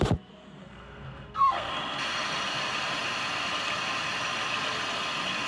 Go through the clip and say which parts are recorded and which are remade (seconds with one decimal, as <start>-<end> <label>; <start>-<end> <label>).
0.0-0.6 recorded; 0.6-1.7 remade; 1.7-5.5 recorded